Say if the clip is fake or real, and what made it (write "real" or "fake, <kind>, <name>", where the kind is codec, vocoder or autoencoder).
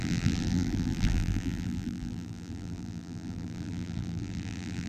fake, vocoder, BigVGAN v2